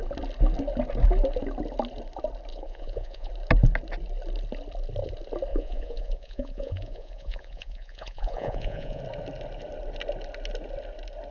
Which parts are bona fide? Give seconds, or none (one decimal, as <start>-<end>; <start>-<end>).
0.0-2.5; 3.3-5.5; 9.0-11.3

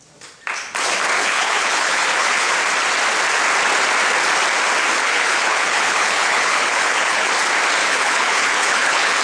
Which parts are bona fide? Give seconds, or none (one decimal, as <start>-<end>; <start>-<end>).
0.0-1.2; 2.5-5.0; 7.3-7.8

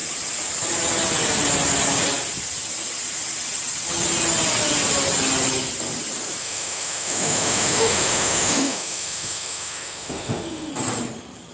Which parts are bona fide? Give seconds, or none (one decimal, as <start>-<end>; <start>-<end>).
0.0-6.4; 10.7-11.5

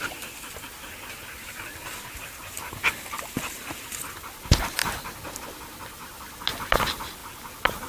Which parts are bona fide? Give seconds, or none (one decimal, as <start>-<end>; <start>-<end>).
0.0-7.9

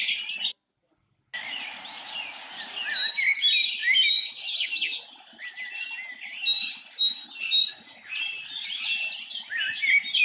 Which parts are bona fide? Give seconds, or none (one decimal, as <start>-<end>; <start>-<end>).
0.0-10.2

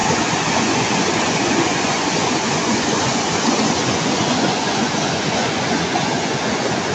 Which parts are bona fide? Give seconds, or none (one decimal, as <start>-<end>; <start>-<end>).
none

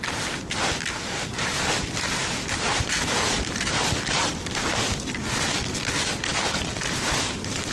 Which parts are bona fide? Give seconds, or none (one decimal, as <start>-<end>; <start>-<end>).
0.0-2.2; 4.7-6.3; 7.0-7.7

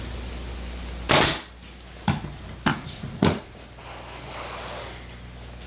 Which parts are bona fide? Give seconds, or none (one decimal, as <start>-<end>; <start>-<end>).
0.0-2.7; 3.6-5.7